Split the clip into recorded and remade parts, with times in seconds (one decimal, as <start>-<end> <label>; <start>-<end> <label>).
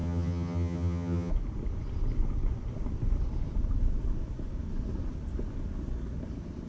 0.0-1.3 remade; 1.3-6.7 recorded